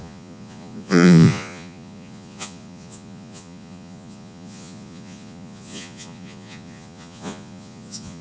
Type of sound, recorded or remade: remade